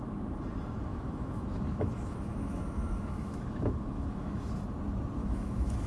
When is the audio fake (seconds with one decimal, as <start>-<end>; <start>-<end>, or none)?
0.9-4.4; 5.2-5.9